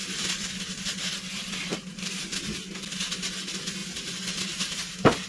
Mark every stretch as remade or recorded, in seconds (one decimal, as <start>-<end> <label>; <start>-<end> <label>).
0.0-2.1 remade; 2.1-3.8 recorded; 3.8-5.3 remade